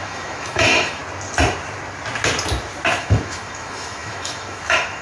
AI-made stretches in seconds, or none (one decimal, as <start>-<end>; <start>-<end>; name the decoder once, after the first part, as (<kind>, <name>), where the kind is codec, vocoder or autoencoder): 0.0-1.0 (autoencoder, DAC-VAE); 3.0-5.0